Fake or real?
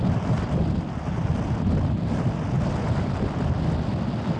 real